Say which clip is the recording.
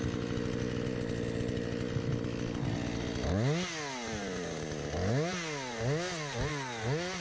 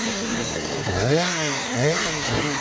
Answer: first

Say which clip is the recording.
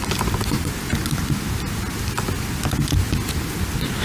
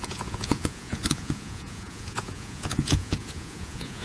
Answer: first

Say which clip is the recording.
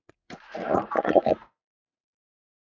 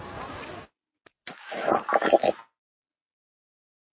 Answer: second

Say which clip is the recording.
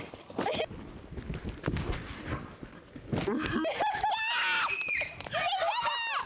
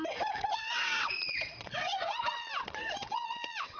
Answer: first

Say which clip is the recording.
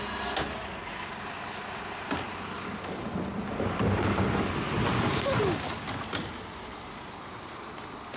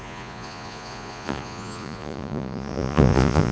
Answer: first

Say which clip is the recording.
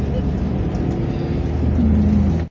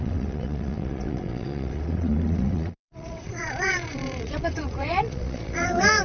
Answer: first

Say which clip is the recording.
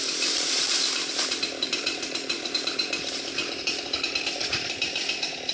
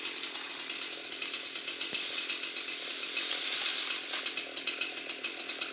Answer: second